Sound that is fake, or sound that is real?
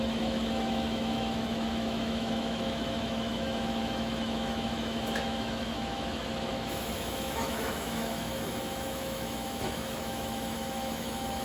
fake